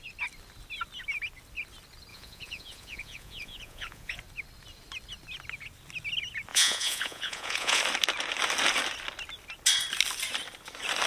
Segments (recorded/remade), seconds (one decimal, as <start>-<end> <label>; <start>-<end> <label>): 0.0-2.1 recorded; 2.1-4.2 remade; 4.2-6.5 recorded; 6.5-7.8 remade; 7.8-11.1 recorded